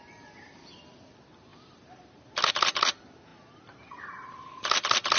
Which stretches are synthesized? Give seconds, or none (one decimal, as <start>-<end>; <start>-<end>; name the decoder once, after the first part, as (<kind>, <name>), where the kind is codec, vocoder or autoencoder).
none